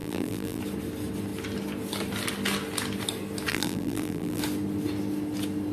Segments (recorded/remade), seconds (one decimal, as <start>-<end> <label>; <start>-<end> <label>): 0.0-0.6 remade; 0.6-3.5 recorded; 3.5-4.4 remade; 4.4-5.7 recorded